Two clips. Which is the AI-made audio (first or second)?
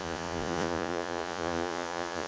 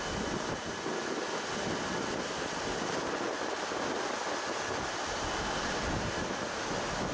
first